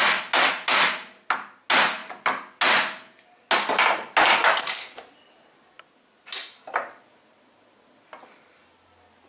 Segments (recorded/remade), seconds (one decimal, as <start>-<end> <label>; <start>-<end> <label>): 0.0-9.3 recorded